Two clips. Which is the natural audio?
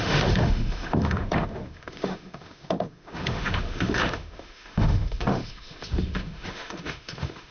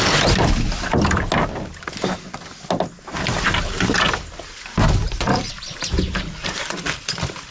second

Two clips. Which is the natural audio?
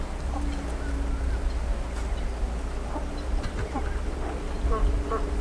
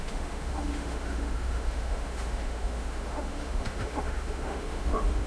first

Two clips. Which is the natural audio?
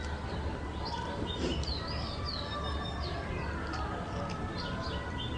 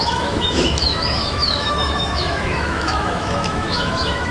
first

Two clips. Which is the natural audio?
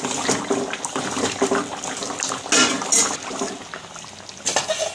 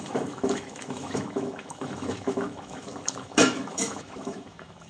first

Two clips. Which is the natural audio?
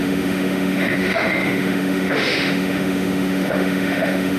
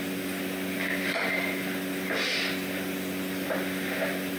second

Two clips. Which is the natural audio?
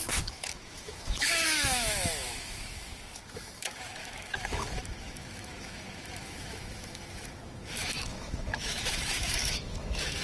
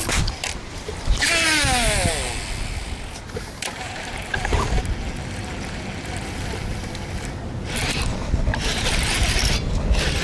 second